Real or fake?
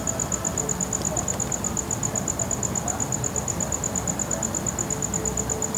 real